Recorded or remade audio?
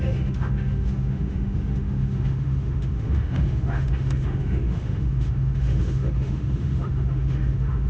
remade